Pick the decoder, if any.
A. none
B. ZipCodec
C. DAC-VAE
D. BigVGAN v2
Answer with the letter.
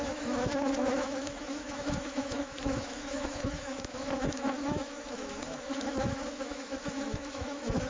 C